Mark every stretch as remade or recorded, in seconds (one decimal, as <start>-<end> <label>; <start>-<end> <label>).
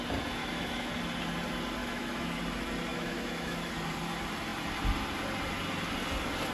0.0-0.4 recorded; 0.4-0.9 remade; 0.9-1.8 recorded; 1.8-2.4 remade; 2.4-2.9 recorded; 2.9-3.7 remade; 3.7-6.5 recorded